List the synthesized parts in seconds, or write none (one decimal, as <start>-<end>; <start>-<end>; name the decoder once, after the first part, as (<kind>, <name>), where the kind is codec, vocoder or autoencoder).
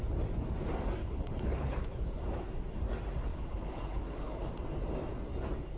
1.0-2.2 (codec, HILCodec); 3.3-4.5